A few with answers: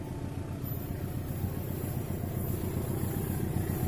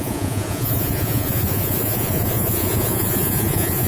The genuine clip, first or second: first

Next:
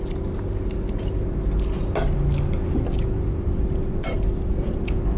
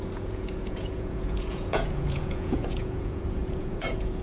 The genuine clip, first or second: first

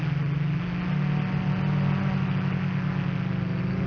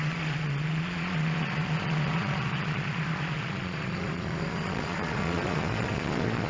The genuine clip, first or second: first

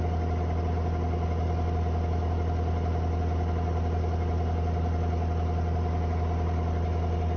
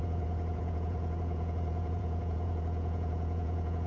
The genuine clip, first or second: first